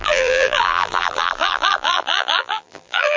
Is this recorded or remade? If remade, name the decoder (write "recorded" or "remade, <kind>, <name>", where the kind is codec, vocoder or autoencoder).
remade, vocoder, BigVGAN v2